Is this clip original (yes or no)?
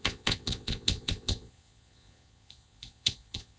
no